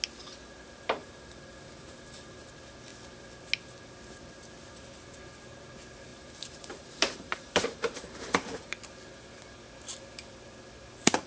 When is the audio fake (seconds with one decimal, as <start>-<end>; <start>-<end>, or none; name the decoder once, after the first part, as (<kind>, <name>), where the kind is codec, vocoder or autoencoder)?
1.0-2.5 (vocoder, BigVGAN v2); 6.1-8.7